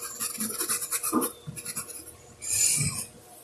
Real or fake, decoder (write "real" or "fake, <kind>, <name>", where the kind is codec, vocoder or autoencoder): real